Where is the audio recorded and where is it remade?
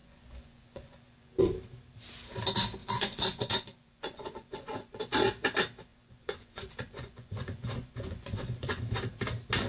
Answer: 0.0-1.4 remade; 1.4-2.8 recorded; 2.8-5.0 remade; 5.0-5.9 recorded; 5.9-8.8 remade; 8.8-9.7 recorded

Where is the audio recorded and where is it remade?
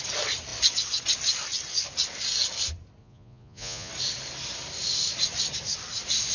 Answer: 0.0-3.0 recorded; 3.0-3.9 remade; 3.9-6.3 recorded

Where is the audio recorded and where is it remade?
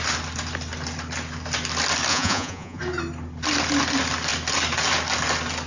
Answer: 0.0-2.1 recorded; 2.1-2.8 remade; 2.8-5.7 recorded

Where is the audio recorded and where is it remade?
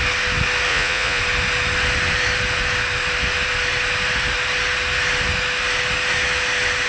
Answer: 0.0-0.7 recorded; 0.7-1.2 remade; 1.2-6.9 recorded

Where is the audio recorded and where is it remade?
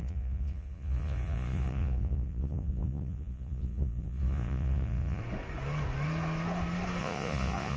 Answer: 0.0-5.2 remade; 5.2-7.0 recorded; 7.0-7.8 remade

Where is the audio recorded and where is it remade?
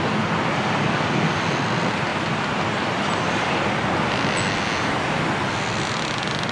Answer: 0.0-6.5 recorded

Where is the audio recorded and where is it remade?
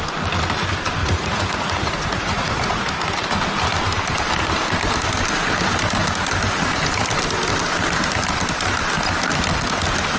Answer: 0.0-1.0 recorded; 1.0-2.9 remade; 2.9-10.2 recorded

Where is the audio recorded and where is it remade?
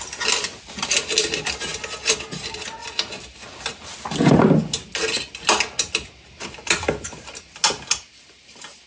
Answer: 0.0-8.9 recorded